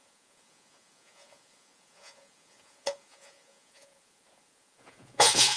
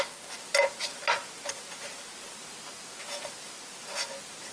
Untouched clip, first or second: second